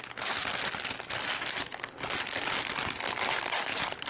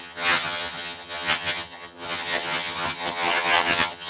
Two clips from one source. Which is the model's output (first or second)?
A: second